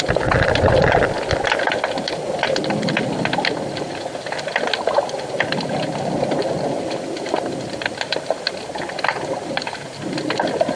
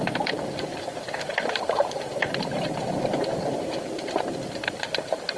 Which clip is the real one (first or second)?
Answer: first